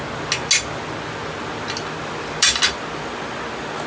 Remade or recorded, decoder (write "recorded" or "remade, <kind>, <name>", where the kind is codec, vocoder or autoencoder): recorded